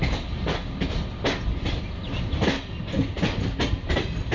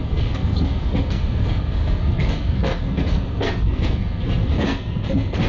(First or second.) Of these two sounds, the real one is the first